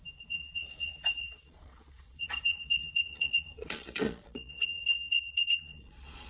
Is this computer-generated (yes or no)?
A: yes